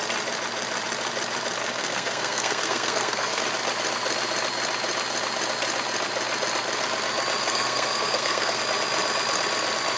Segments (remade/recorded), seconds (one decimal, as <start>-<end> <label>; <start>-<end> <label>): 0.0-1.6 recorded; 1.6-3.4 remade; 3.4-7.4 recorded; 7.4-8.6 remade; 8.6-10.0 recorded